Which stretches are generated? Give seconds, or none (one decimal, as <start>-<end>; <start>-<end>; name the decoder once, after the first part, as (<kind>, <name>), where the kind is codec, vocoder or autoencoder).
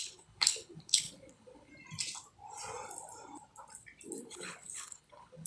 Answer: 0.0-1.7 (codec, HILCodec); 4.2-5.5